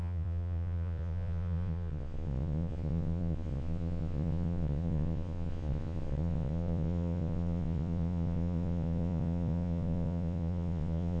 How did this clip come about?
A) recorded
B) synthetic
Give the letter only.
B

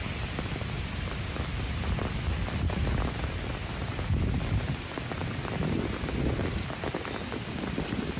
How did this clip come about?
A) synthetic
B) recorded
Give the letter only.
B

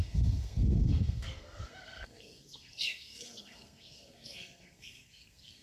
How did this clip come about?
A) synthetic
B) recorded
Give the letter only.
A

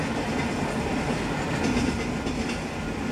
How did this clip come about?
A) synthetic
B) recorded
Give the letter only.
B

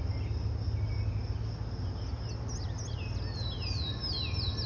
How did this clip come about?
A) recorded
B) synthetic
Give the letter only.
A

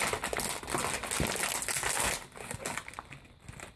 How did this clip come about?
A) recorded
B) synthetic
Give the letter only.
A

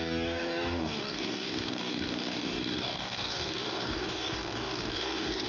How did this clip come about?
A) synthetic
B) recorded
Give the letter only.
A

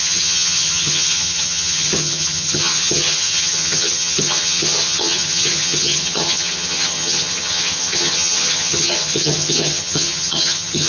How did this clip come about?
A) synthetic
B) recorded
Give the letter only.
A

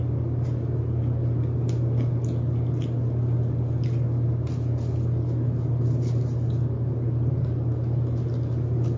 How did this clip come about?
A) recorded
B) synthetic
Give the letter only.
A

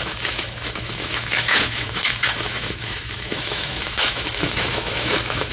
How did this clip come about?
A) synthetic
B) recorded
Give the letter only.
A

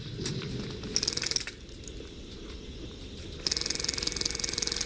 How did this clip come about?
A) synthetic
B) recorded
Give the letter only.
B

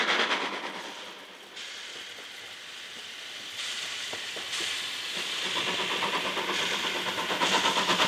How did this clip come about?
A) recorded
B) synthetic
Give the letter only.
A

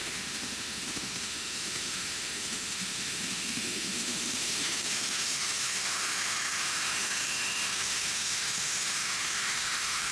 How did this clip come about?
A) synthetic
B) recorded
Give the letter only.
A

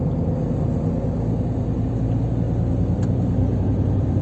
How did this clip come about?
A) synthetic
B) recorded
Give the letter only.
B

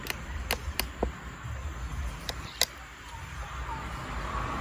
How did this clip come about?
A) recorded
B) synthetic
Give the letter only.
A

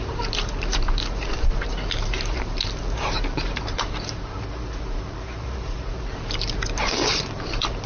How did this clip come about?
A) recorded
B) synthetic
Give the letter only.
B